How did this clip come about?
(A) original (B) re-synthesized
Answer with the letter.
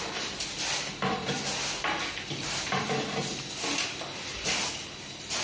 A